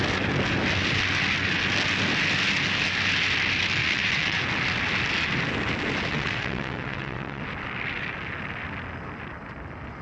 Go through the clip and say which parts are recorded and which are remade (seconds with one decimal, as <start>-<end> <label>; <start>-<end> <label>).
0.0-3.8 recorded; 3.8-4.4 remade; 4.4-6.1 recorded; 6.1-7.4 remade; 7.4-10.0 recorded